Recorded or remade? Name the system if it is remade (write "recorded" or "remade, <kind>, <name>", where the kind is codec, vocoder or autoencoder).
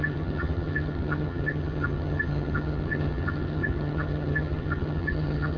remade, vocoder, HiFi-GAN